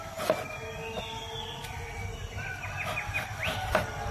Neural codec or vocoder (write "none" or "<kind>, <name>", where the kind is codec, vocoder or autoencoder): none